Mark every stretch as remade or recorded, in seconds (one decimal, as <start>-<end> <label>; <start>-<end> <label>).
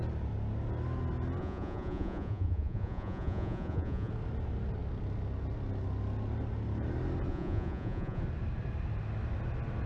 0.0-1.4 recorded; 1.4-4.1 remade; 4.1-7.3 recorded; 7.3-8.2 remade; 8.2-9.9 recorded